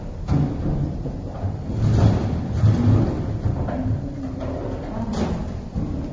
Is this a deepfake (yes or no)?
no